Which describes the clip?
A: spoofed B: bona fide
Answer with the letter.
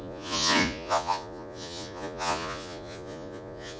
A